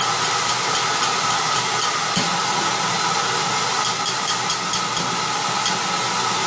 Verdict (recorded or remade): recorded